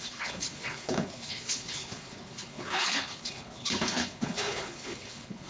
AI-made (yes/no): yes